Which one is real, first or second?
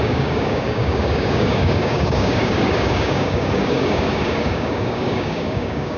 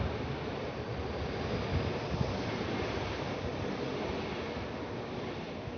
second